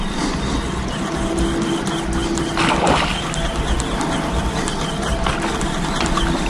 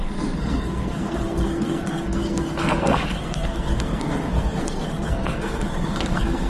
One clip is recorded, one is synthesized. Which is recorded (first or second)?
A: first